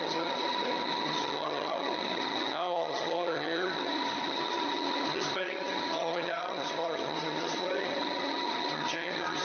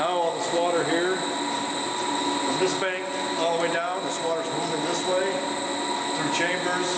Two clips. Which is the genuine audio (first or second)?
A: second